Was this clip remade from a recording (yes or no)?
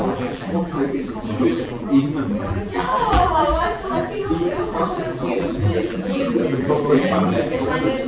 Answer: yes